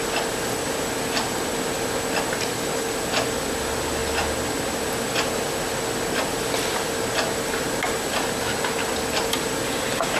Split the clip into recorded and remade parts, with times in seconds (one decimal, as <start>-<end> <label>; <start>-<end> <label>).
0.0-10.2 recorded